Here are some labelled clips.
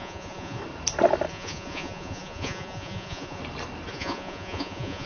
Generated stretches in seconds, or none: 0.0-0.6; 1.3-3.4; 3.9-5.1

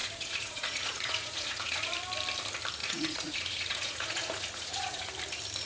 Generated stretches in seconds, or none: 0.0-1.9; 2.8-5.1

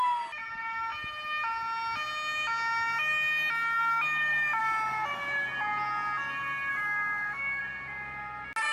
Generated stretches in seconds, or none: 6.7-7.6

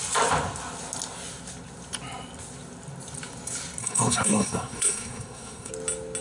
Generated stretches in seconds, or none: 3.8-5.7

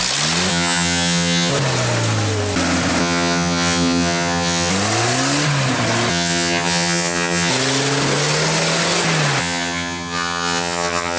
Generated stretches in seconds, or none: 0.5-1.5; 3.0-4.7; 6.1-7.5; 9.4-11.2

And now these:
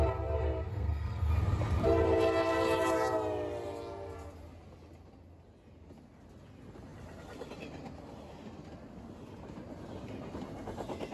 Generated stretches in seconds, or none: 0.7-1.3

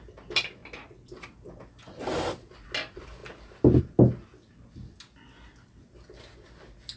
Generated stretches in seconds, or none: none